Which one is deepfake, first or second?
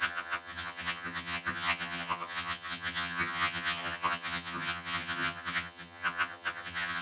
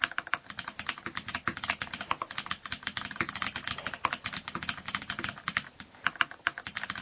first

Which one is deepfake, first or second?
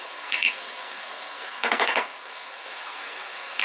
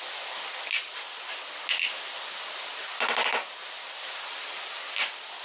first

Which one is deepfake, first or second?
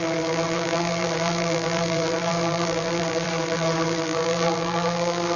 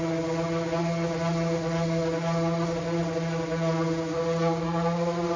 first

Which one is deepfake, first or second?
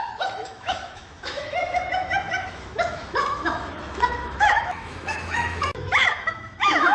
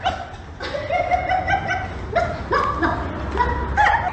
first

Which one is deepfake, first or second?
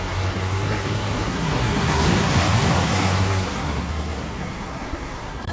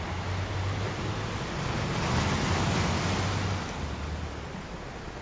first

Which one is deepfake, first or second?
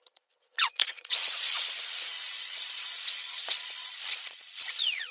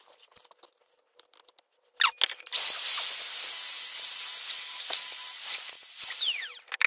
first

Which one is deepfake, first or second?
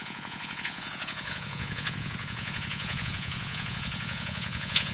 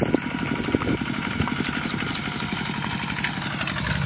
first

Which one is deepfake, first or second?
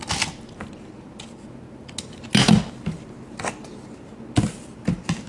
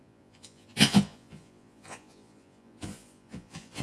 second